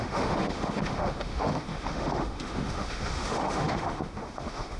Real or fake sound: fake